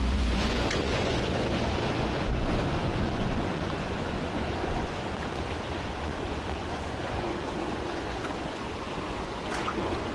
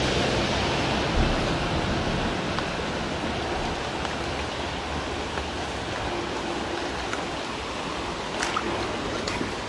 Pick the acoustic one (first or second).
second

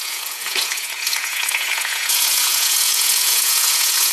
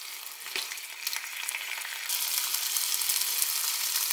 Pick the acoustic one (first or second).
second